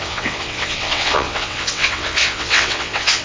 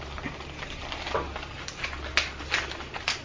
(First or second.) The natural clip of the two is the second